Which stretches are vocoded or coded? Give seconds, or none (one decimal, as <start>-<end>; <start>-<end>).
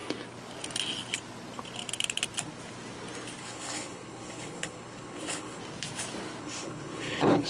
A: 3.4-5.6; 6.4-7.5